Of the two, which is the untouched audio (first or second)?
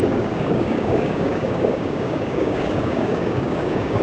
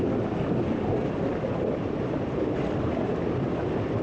second